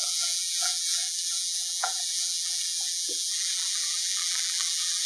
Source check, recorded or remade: remade